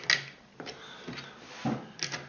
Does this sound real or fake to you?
real